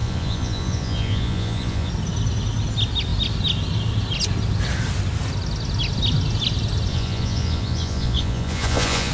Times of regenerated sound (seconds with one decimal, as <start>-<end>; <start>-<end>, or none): 0.0-1.9; 6.9-9.1